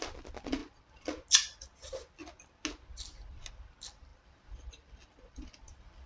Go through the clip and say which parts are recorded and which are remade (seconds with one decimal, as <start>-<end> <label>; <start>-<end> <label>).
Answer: 0.0-6.1 recorded